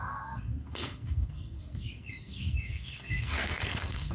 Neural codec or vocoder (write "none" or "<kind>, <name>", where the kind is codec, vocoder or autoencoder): codec, SNAC